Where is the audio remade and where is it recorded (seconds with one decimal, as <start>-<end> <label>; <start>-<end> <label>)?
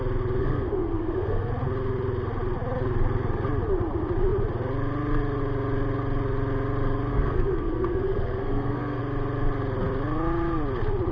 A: 0.0-0.4 recorded; 0.4-1.5 remade; 1.5-7.1 recorded; 7.1-9.0 remade; 9.0-11.1 recorded